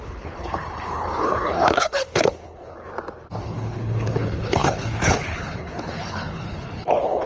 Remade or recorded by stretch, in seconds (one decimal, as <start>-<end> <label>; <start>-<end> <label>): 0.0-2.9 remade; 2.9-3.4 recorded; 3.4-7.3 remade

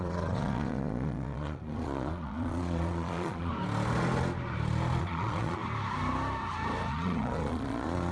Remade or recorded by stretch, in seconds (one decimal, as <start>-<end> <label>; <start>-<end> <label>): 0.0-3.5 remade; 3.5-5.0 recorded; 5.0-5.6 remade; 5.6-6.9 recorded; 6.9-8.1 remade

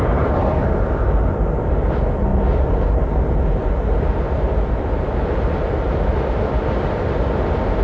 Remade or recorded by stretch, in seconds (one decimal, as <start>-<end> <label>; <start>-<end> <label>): 0.0-7.8 recorded

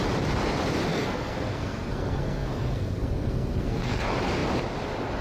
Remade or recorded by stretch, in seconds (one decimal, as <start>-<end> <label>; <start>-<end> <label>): 0.0-0.9 recorded; 0.9-4.0 remade; 4.0-5.2 recorded